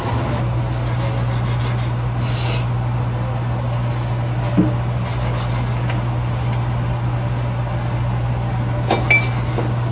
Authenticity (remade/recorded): recorded